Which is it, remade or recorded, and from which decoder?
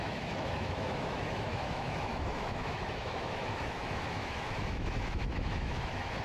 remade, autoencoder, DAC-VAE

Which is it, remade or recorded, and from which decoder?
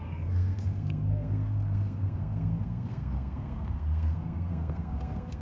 remade, codec, SNAC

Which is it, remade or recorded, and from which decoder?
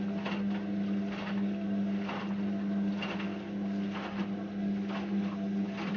recorded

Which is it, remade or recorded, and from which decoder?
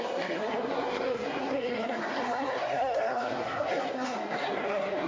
remade, codec, SNAC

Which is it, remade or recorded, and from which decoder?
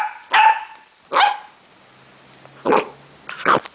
recorded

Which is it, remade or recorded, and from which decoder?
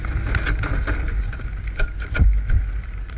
recorded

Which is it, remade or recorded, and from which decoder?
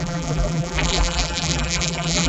remade, vocoder, BigVGAN v2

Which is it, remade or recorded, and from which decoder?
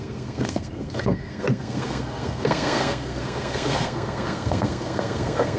remade, codec, SNAC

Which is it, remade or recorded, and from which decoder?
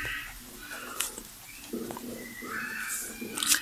recorded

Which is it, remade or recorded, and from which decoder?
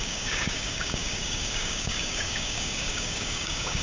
remade, codec, DAC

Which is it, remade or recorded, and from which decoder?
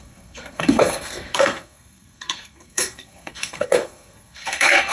remade, codec, SNAC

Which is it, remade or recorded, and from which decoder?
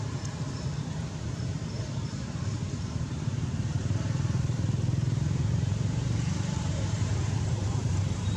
remade, vocoder, BigVGAN v2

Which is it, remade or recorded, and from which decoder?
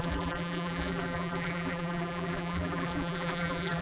remade, vocoder, BigVGAN v2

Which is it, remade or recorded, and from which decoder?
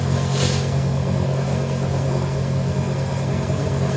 remade, codec, SNAC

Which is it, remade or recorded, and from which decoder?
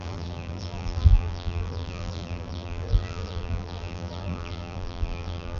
remade, vocoder, BigVGAN v2